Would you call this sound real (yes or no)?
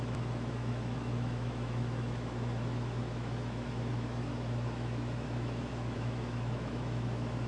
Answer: no